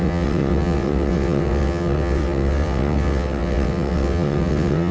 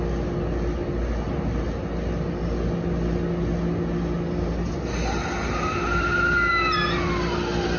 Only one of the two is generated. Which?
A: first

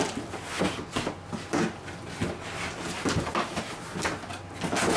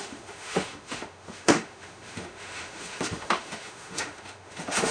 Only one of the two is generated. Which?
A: second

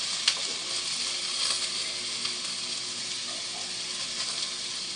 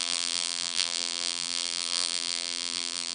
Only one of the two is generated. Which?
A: second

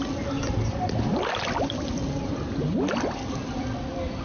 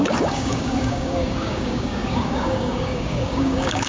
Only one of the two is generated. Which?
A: second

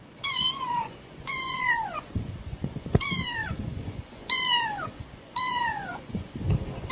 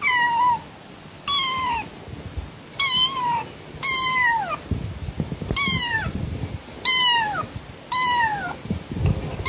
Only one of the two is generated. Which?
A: first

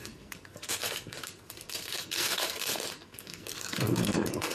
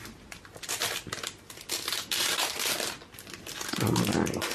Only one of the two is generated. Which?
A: first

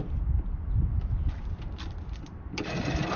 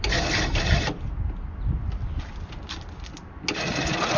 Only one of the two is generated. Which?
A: first